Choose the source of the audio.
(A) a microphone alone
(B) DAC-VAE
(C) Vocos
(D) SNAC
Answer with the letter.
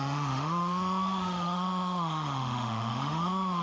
B